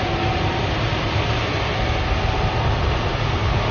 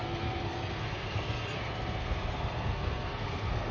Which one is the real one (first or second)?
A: first